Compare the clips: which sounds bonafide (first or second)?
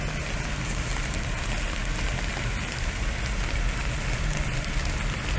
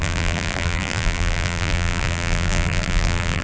first